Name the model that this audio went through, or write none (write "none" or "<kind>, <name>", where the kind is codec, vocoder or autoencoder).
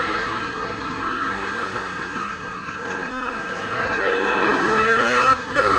codec, SNAC